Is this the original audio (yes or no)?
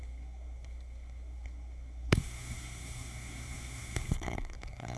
no